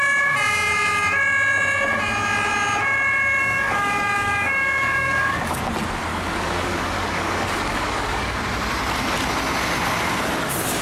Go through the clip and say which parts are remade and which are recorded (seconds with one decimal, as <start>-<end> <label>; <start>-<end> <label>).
0.0-3.4 recorded; 3.4-5.6 remade; 5.6-6.1 recorded; 6.1-8.4 remade; 8.4-10.8 recorded